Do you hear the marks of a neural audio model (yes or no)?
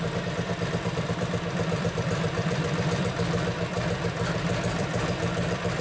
yes